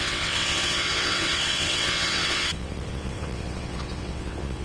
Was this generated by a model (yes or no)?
yes